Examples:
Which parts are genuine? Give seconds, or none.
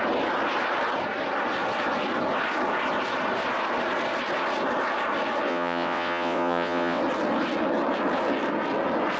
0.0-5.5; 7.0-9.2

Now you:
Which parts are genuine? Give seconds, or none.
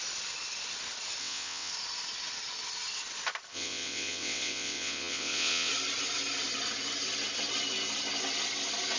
0.0-1.2; 1.7-3.5; 5.7-9.0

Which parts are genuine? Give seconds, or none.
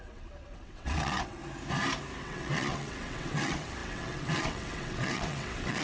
1.4-2.2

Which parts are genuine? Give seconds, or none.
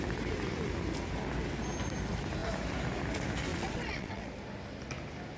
0.0-3.5; 4.3-5.4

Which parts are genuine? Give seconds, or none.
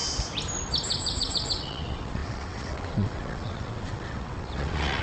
0.0-0.9